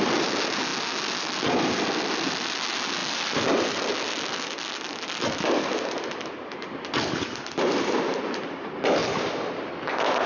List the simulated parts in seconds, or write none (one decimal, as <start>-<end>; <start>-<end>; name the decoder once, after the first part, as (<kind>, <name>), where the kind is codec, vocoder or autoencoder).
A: none